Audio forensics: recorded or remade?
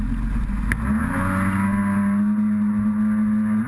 recorded